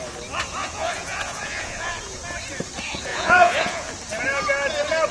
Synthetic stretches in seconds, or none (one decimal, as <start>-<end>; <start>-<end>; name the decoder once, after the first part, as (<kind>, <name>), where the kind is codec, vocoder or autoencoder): 0.6-2.0 (vocoder, Vocos); 3.1-3.9